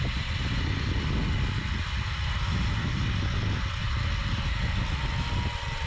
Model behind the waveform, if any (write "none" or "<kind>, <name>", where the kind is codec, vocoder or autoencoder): none